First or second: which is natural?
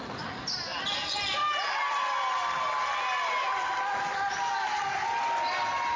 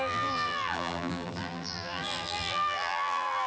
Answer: first